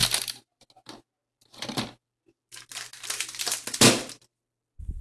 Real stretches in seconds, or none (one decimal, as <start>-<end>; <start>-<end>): 0.0-5.0

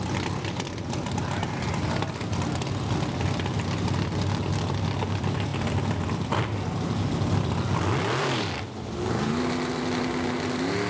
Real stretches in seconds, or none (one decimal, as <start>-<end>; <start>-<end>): 0.0-10.9

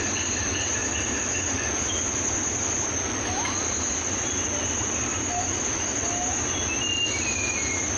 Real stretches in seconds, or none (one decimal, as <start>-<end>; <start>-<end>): 0.0-8.0

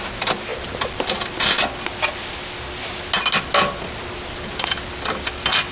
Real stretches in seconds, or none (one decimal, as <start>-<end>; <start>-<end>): 0.0-0.5; 1.4-5.7